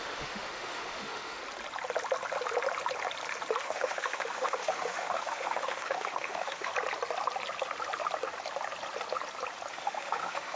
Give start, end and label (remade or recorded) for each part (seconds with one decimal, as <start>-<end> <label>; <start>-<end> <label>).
0.0-1.4 remade; 1.4-3.6 recorded; 3.6-6.7 remade; 6.7-9.7 recorded; 9.7-10.6 remade